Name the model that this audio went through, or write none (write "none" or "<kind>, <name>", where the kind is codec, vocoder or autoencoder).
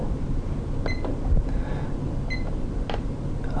none